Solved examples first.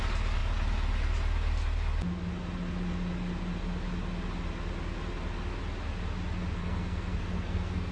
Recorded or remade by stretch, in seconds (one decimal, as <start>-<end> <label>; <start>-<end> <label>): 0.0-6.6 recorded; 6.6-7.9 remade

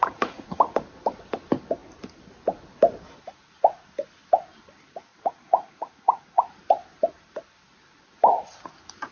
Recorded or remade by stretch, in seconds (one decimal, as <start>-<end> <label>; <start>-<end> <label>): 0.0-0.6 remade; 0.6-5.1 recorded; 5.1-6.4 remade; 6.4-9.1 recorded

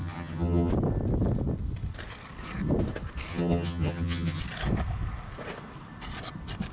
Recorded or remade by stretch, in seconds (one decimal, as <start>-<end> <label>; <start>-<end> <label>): 0.0-0.7 remade; 0.7-3.3 recorded; 3.3-4.4 remade; 4.4-6.7 recorded